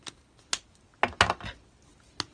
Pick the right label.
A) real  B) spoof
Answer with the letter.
A